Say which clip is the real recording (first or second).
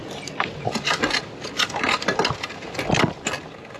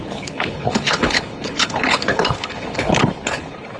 first